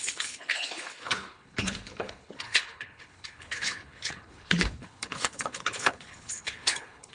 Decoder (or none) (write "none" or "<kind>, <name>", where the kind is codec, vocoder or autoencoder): codec, HILCodec